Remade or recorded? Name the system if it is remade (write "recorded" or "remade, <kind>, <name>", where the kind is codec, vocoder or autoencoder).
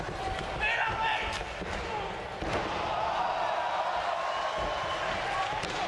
recorded